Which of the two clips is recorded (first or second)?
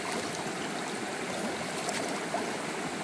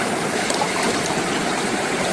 first